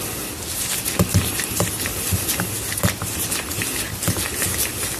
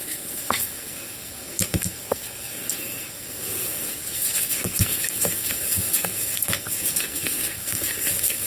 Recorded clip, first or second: first